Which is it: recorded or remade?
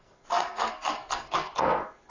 remade